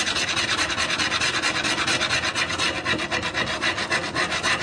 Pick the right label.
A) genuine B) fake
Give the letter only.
A